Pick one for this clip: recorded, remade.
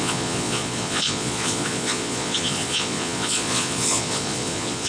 remade